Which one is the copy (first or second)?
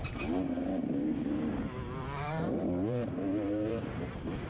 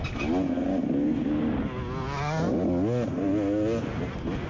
first